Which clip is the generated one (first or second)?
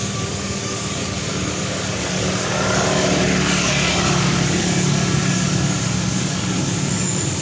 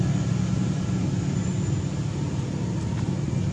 first